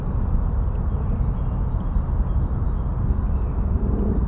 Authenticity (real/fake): real